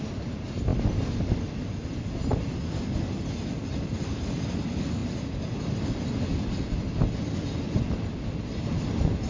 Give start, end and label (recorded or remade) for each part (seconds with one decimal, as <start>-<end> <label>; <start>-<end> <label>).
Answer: 0.0-9.3 recorded

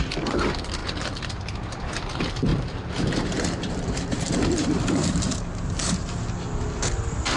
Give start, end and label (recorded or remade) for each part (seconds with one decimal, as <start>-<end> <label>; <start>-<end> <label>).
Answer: 0.0-0.8 recorded; 0.8-1.8 remade; 1.8-2.5 recorded; 2.5-6.2 remade; 6.2-7.4 recorded

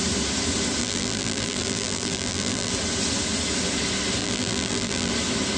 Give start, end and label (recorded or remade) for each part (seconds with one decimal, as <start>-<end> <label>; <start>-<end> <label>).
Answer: 0.0-0.8 recorded; 0.8-2.7 remade; 2.7-4.2 recorded; 4.2-5.1 remade; 5.1-5.6 recorded

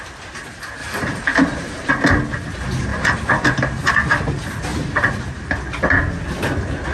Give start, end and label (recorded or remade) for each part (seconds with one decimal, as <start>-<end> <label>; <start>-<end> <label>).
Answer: 0.0-0.8 recorded; 0.8-1.9 remade; 1.9-2.9 recorded; 2.9-3.9 remade; 3.9-4.7 recorded; 4.7-5.5 remade; 5.5-6.9 recorded

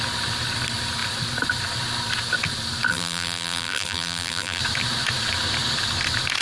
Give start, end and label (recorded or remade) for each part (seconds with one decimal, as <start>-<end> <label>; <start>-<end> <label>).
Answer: 0.0-2.9 recorded; 2.9-4.6 remade; 4.6-6.4 recorded

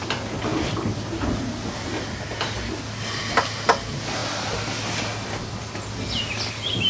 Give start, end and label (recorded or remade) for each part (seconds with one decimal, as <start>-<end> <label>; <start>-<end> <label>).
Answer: 0.0-0.5 recorded; 0.5-1.5 remade; 1.5-6.9 recorded